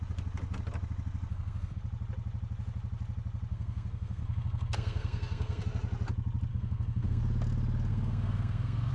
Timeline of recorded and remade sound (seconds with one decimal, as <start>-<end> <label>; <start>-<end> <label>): 0.0-1.3 recorded; 1.3-1.8 remade; 1.8-3.5 recorded; 3.5-5.6 remade; 5.6-6.5 recorded; 6.5-7.2 remade; 7.2-7.9 recorded; 7.9-8.9 remade